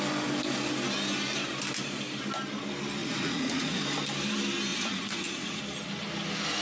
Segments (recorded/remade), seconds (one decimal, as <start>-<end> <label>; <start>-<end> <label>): 0.0-3.0 recorded; 3.0-3.8 remade; 3.8-4.7 recorded; 4.7-5.6 remade; 5.6-6.6 recorded